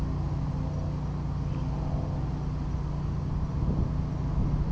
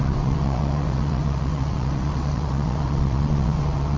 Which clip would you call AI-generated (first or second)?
second